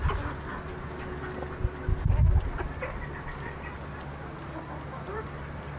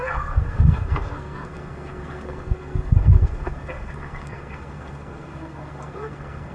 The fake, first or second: second